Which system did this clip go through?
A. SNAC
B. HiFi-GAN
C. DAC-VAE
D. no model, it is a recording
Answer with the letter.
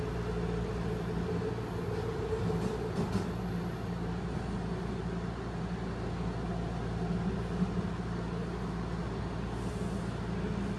D